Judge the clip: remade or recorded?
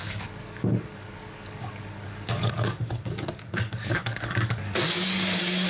remade